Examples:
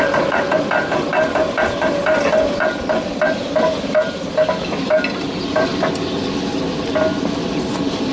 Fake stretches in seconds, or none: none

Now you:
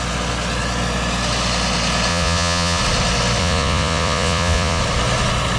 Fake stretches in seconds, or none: 2.1-2.8 (vocoder, Vocos); 3.4-4.8

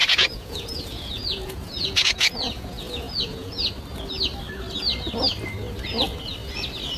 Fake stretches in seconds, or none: 0.0-3.7 (vocoder, Vocos)

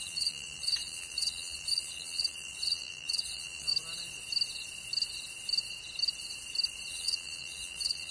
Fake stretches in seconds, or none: 0.0-3.7 (vocoder, Vocos); 6.9-8.1

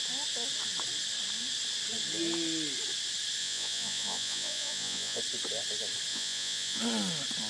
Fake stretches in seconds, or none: 3.4-5.2 (vocoder, Vocos); 6.1-6.8